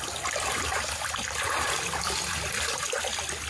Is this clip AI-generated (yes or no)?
no